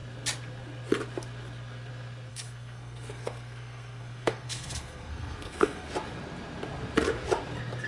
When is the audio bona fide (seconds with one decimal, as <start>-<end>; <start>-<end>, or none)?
0.0-2.3; 5.9-7.9